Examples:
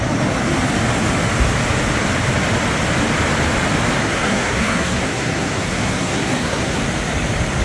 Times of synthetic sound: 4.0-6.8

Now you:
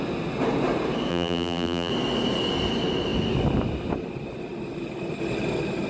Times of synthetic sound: 1.1-1.9

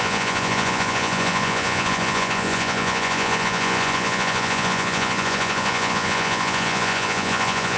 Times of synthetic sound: 0.0-7.8

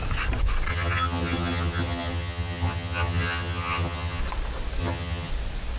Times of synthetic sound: 0.7-4.2; 4.8-5.3

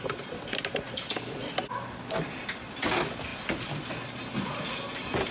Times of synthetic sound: none